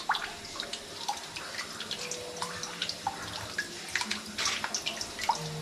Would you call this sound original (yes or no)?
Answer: yes